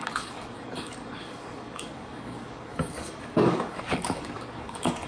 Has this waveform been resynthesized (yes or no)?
yes